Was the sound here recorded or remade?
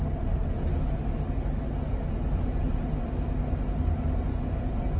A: recorded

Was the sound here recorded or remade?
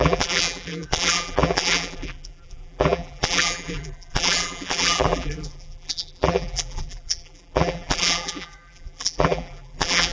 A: remade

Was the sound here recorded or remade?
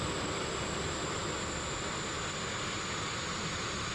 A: recorded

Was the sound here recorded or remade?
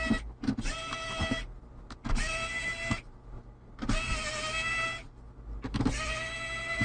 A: recorded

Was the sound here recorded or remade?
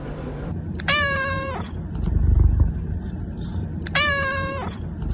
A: remade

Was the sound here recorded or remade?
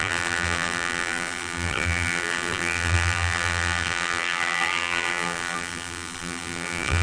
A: remade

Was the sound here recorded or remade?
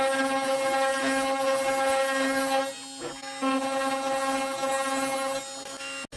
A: recorded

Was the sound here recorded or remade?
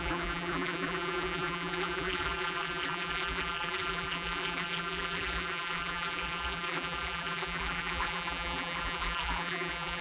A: remade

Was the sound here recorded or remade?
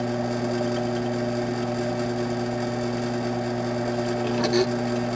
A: recorded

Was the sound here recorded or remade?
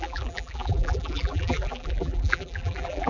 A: remade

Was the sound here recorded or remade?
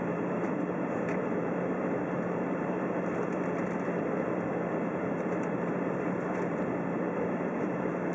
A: remade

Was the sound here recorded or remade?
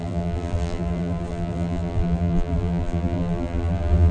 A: remade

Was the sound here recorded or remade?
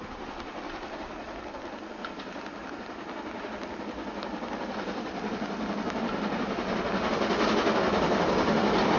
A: recorded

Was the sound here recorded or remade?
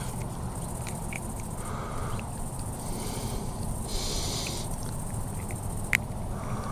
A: recorded